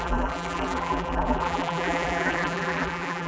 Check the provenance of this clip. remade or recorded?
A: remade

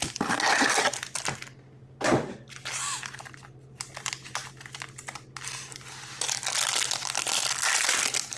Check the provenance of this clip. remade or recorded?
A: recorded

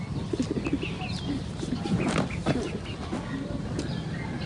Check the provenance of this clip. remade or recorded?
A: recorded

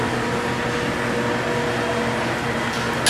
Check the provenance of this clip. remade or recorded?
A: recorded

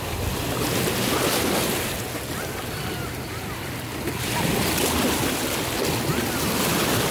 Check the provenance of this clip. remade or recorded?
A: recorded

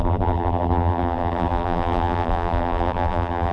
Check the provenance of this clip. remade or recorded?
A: remade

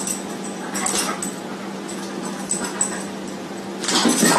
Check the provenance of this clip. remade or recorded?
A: recorded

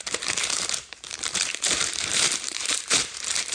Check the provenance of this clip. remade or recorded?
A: remade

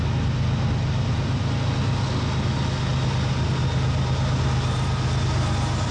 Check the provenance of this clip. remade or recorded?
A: recorded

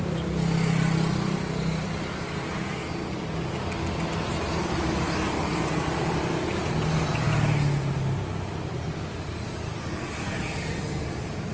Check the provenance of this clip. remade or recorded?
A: recorded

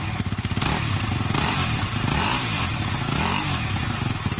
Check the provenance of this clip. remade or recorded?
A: remade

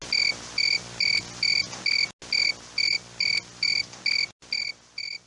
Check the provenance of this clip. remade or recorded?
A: recorded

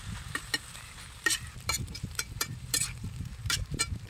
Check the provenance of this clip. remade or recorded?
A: remade